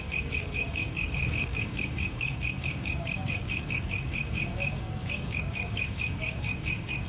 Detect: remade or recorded remade